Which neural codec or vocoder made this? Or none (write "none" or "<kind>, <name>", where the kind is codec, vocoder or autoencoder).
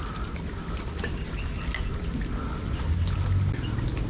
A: none